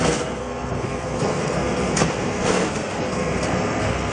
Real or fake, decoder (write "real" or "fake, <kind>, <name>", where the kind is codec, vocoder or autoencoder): fake, codec, SNAC